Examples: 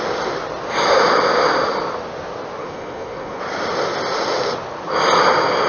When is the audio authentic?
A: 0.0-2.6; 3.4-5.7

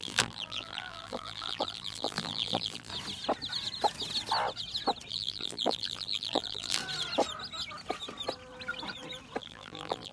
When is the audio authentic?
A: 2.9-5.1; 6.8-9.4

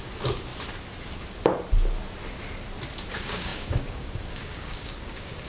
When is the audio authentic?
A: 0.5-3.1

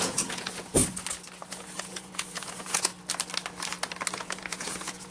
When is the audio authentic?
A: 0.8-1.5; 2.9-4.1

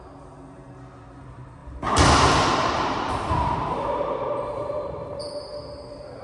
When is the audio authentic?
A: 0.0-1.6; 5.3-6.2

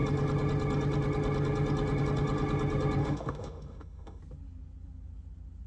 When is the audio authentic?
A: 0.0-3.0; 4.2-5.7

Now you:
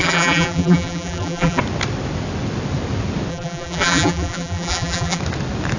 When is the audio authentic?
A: 1.6-3.3; 5.2-5.8

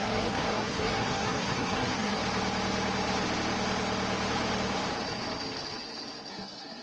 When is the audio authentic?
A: 2.2-6.3